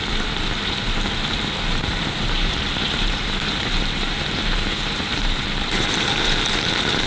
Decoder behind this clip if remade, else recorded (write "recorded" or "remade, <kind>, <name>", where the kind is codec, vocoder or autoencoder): remade, vocoder, BigVGAN v2